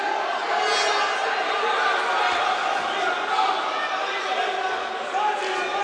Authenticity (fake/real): real